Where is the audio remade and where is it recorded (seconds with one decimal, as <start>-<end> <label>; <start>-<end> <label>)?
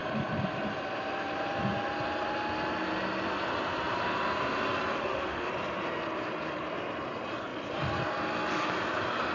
0.0-5.0 recorded; 5.0-5.5 remade; 5.5-9.3 recorded